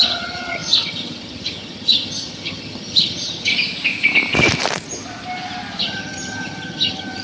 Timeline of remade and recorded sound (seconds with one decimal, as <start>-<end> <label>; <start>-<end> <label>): 0.0-3.5 remade; 3.5-5.8 recorded; 5.8-7.2 remade